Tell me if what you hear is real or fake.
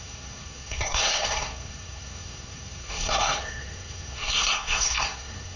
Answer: fake